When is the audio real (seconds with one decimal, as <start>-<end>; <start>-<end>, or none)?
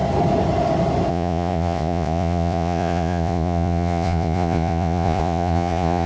0.0-1.1